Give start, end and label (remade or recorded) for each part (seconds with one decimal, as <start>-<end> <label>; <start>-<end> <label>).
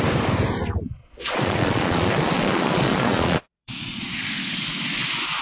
0.0-1.0 recorded; 1.0-4.2 remade; 4.2-5.4 recorded